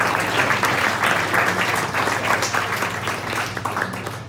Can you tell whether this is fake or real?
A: real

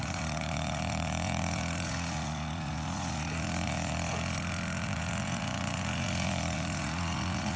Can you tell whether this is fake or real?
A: fake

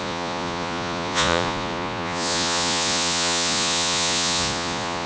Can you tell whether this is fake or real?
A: fake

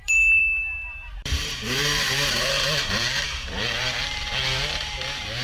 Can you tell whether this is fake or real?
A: fake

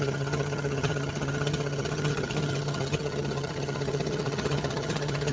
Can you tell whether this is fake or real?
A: fake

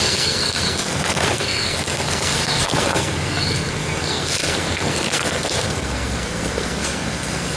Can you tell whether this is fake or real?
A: fake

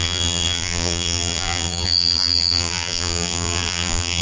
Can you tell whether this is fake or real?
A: fake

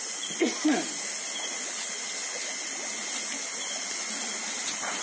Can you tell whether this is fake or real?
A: real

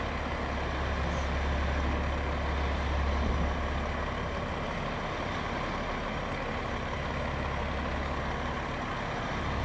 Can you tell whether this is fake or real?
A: real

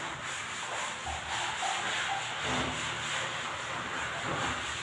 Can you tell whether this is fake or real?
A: real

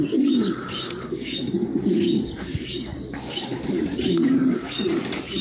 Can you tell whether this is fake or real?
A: fake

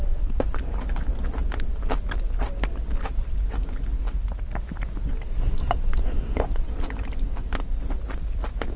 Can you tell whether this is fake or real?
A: real